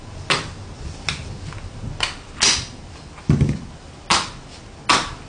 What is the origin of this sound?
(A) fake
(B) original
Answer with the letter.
B